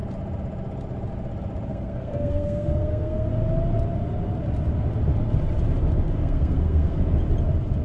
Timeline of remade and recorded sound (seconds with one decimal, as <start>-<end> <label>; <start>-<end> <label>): 0.0-1.7 recorded; 1.7-3.3 remade; 3.3-6.2 recorded; 6.2-7.0 remade; 7.0-7.8 recorded